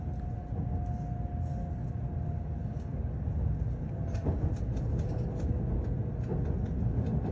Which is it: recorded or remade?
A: recorded